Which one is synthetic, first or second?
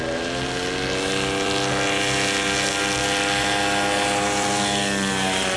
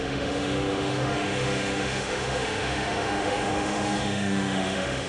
second